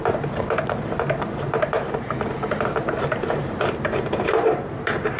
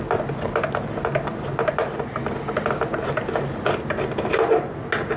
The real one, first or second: second